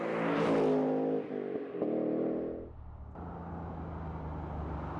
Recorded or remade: recorded